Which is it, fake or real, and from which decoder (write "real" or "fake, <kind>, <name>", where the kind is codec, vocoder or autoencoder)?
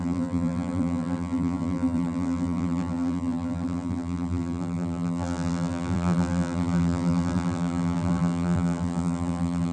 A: fake, vocoder, BigVGAN v2